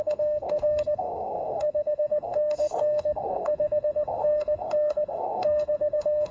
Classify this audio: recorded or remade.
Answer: remade